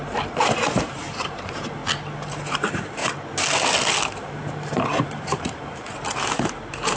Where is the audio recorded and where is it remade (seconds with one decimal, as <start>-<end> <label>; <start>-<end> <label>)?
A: 0.0-1.8 remade; 1.8-2.5 recorded; 2.5-3.0 remade; 3.0-4.5 recorded; 4.5-7.0 remade